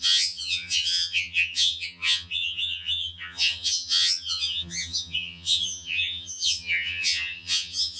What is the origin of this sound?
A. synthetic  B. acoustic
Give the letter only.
A